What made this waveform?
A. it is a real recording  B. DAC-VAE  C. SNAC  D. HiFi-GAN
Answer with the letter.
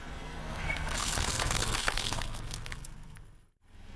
C